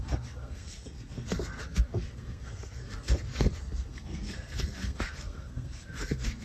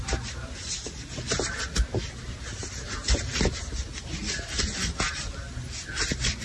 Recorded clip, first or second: second